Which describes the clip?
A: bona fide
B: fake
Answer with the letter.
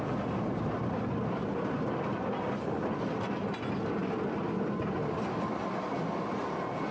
A